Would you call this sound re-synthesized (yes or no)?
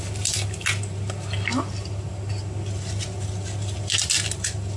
no